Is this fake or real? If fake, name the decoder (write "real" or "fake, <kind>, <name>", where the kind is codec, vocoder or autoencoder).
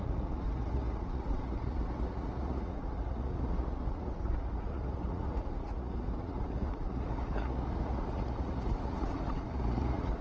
fake, vocoder, Vocos